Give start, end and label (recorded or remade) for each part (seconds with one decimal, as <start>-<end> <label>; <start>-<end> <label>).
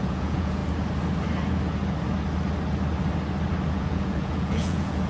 0.0-0.6 remade; 0.6-3.7 recorded; 3.7-5.1 remade